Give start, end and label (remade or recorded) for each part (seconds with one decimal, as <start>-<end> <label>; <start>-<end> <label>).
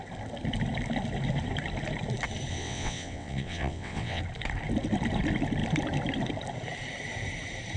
0.0-2.5 recorded; 2.5-4.2 remade; 4.2-7.8 recorded